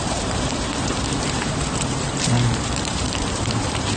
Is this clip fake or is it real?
fake